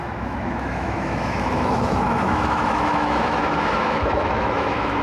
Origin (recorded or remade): remade